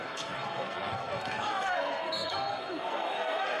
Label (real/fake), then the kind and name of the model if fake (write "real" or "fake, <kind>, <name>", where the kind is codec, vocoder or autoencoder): fake, codec, SNAC